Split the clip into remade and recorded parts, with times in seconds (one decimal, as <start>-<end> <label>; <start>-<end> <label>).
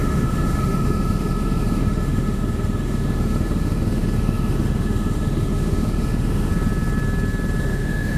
0.0-6.5 remade; 6.5-7.6 recorded; 7.6-8.2 remade